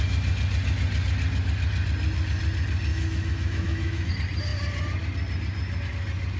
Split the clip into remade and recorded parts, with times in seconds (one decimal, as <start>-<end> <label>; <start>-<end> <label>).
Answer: 0.0-2.9 recorded; 2.9-4.1 remade; 4.1-6.4 recorded